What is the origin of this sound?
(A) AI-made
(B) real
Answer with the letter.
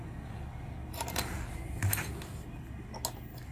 B